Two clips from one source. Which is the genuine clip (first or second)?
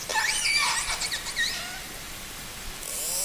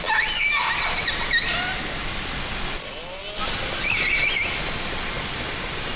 second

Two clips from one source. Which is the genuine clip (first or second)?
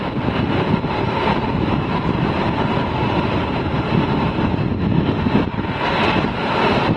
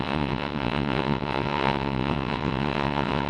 first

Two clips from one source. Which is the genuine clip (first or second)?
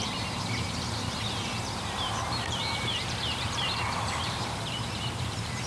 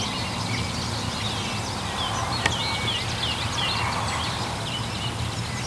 second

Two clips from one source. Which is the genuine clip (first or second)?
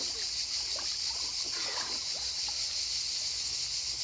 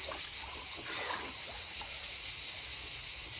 first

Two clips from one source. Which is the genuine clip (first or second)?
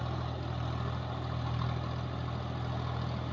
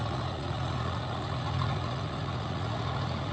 first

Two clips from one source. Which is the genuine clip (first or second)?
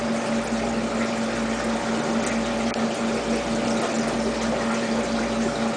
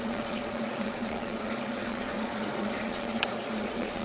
first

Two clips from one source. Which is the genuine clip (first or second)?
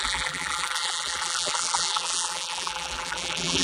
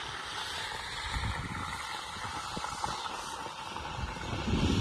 second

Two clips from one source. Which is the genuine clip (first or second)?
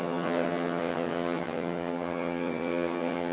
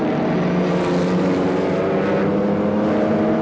second